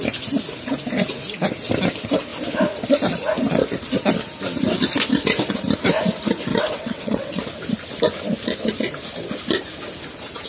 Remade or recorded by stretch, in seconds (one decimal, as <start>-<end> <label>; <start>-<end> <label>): 0.0-6.5 recorded; 6.5-7.4 remade; 7.4-10.5 recorded